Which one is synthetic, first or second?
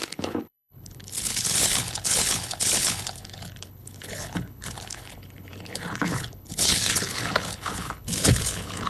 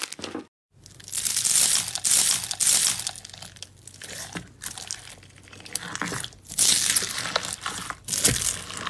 first